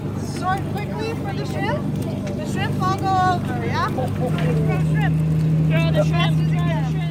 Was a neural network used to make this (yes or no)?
no